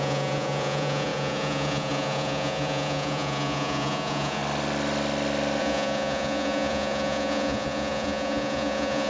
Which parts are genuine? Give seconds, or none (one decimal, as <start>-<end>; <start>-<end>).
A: 4.4-5.6